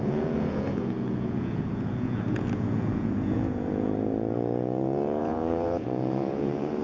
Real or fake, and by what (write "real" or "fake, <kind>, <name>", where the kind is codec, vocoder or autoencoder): fake, vocoder, Vocos